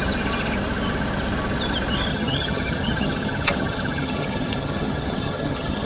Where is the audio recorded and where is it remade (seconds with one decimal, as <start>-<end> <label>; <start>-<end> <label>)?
0.0-2.1 recorded; 2.1-5.9 remade